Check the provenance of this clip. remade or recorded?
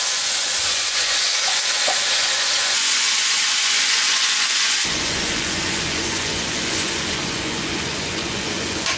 remade